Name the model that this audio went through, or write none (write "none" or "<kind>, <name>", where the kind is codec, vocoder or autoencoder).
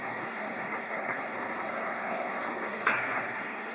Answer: codec, SNAC